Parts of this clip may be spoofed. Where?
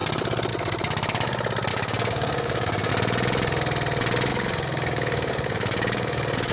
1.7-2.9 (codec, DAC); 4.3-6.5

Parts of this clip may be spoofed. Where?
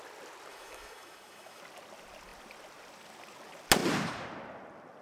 0.5-1.6 (autoencoder, DAC-VAE)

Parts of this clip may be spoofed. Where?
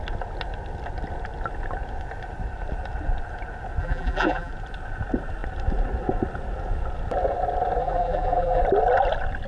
3.8-4.5 (vocoder, BigVGAN v2); 7.8-8.6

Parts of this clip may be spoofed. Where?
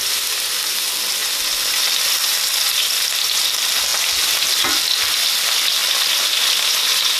none